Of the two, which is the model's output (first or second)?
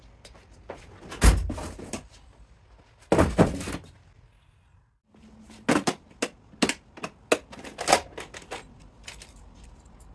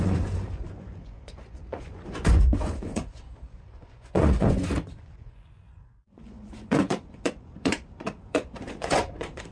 second